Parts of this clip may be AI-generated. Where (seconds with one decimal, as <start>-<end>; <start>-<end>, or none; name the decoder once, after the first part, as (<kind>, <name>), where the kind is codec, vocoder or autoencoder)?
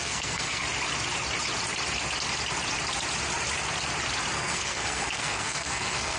0.0-0.6 (codec, SNAC); 4.3-6.2